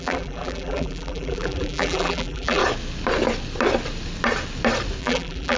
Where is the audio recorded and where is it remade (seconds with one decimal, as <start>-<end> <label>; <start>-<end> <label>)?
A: 0.0-2.6 remade; 2.6-5.0 recorded; 5.0-5.6 remade